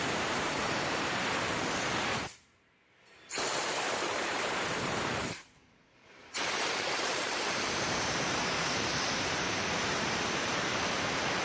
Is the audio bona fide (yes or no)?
no